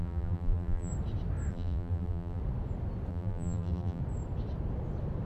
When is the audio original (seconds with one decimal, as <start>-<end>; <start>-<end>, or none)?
0.9-1.5; 2.4-3.1; 4.0-5.3